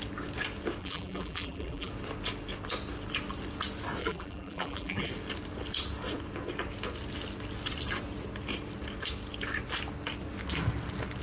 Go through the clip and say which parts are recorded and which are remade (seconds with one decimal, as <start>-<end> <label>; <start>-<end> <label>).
0.0-0.8 recorded; 0.8-1.9 remade; 1.9-4.0 recorded; 4.0-5.1 remade; 5.1-11.2 recorded